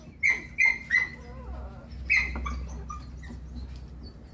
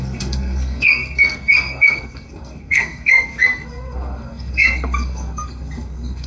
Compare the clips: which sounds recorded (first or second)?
first